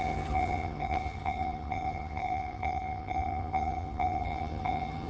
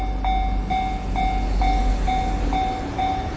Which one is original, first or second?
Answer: second